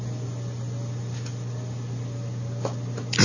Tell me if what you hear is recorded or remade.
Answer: recorded